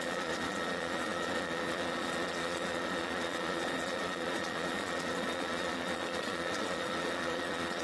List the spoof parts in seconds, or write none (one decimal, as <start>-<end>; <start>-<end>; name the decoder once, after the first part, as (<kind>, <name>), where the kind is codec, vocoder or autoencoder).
0.0-7.8 (vocoder, Vocos)